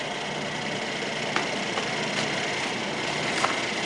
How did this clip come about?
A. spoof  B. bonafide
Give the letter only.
B